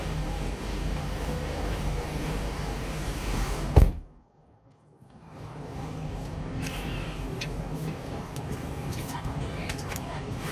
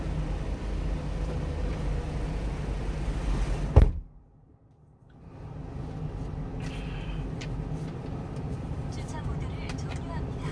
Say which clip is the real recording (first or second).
second